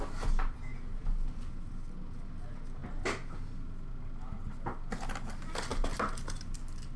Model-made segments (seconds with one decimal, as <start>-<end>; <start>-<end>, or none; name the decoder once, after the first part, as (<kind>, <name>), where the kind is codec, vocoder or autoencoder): none